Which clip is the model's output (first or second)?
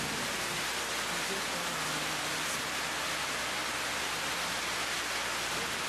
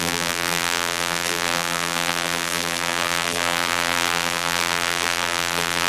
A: second